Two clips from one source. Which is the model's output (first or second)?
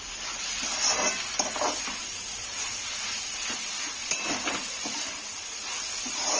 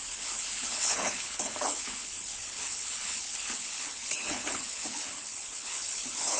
second